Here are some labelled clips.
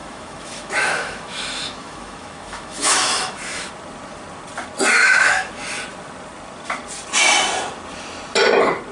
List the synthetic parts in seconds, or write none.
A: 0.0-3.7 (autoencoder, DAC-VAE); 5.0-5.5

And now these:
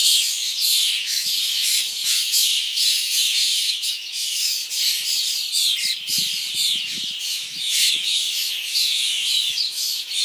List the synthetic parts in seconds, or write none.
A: 0.0-4.6 (autoencoder, DAC-VAE); 7.2-10.2

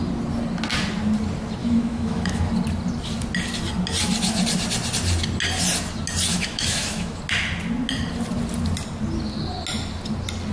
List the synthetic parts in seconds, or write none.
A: 1.6-2.5 (autoencoder, DAC-VAE); 6.3-7.2

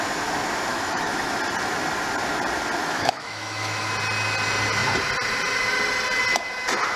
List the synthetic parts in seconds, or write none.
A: 0.7-1.3 (autoencoder, DAC-VAE); 2.8-3.9

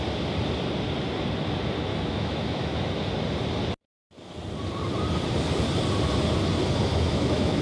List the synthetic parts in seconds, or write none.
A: 1.9-2.8 (autoencoder, DAC-VAE); 6.9-7.6

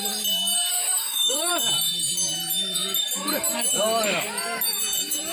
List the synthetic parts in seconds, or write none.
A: 0.7-1.5 (autoencoder, DAC-VAE)